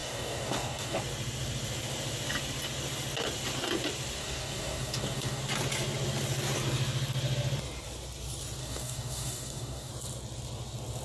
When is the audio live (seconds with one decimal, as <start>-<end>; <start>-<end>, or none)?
1.0-4.2; 5.4-8.6; 9.9-11.0